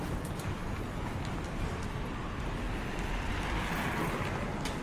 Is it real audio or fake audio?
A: real